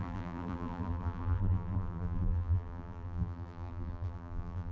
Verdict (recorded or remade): remade